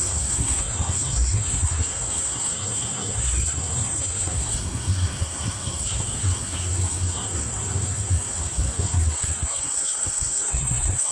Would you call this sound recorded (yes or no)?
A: no